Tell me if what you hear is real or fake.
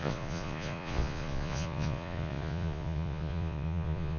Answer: fake